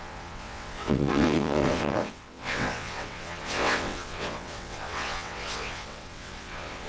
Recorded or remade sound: remade